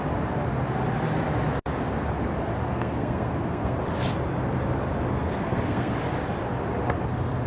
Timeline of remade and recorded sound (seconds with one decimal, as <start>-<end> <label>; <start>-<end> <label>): 0.0-2.7 recorded; 2.7-3.8 remade; 3.8-5.1 recorded; 5.1-5.9 remade; 5.9-7.5 recorded